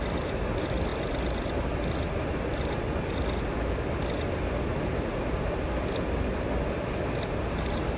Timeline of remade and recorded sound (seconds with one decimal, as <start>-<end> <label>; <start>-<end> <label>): 0.0-8.0 recorded